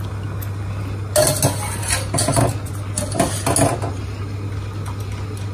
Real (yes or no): yes